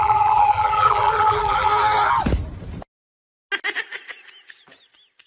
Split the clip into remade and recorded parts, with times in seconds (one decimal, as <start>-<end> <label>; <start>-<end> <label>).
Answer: 0.0-1.7 remade; 1.7-5.3 recorded